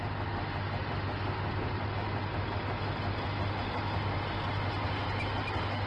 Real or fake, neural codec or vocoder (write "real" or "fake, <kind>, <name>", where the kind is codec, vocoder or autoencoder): real